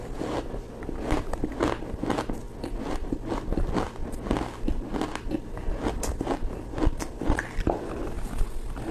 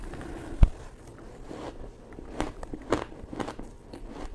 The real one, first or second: first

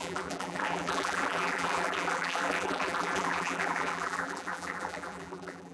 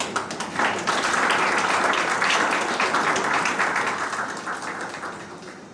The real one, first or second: second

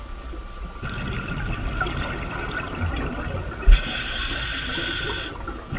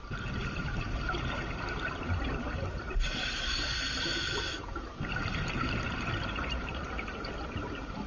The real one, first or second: first